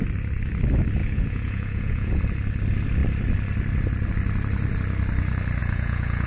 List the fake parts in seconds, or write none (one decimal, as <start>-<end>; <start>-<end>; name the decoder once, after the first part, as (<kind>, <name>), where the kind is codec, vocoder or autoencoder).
1.0-2.2 (vocoder, Vocos); 5.6-6.3